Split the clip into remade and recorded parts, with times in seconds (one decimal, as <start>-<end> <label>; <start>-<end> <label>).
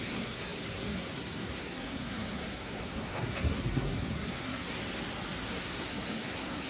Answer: 0.0-4.8 remade; 4.8-5.4 recorded; 5.4-6.7 remade